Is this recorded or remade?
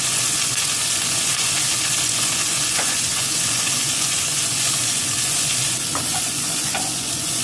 remade